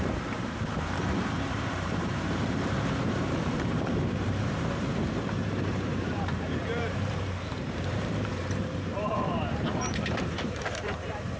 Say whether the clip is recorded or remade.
remade